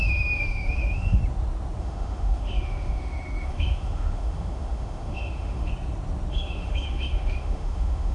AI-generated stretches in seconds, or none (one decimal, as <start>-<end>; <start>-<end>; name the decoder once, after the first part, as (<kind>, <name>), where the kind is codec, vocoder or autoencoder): 0.0-1.2 (autoencoder, DAC-VAE); 1.8-5.7; 6.3-8.1